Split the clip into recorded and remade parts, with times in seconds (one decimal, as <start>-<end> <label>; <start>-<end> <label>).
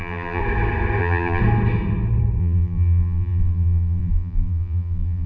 0.0-0.4 remade; 0.4-1.0 recorded; 1.0-1.4 remade; 1.4-2.4 recorded; 2.4-5.3 remade